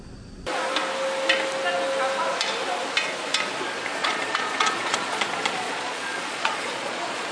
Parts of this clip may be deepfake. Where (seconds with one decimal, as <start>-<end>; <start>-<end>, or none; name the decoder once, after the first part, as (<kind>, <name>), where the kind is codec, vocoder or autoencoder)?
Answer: 4.0-7.3 (vocoder, Vocos)